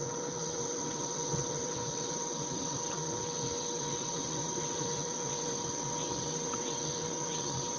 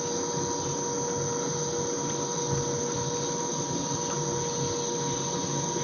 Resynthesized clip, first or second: first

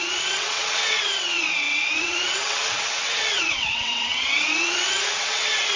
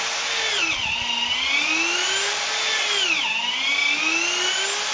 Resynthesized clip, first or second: first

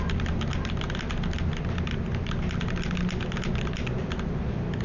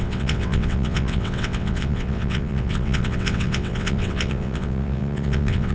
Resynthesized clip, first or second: second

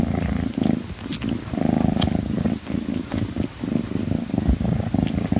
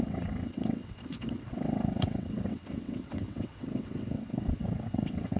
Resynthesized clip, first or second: second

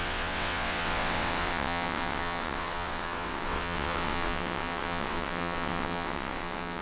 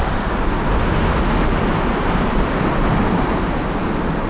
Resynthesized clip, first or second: first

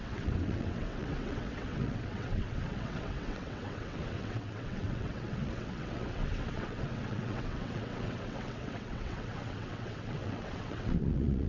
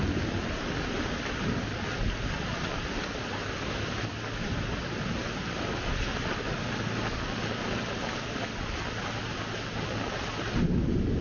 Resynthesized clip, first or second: first